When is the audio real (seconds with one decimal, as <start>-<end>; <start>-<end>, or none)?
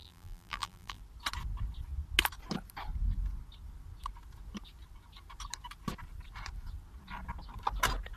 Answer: 1.0-8.2